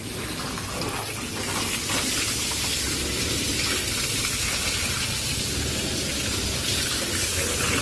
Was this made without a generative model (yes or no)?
yes